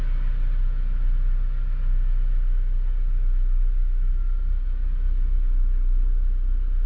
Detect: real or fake real